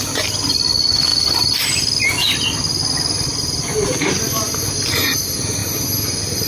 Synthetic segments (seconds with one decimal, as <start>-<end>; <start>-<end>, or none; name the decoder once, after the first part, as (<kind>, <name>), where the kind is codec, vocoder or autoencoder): none

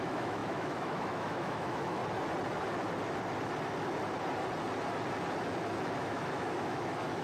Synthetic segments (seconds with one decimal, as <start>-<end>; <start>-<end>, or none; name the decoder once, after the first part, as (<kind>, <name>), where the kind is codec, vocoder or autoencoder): 0.0-2.0 (autoencoder, DAC-VAE); 6.0-7.2